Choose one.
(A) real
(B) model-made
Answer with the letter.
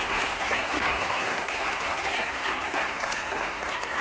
B